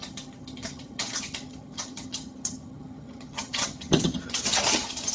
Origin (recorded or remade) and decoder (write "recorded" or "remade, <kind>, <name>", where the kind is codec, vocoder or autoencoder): remade, vocoder, HiFi-GAN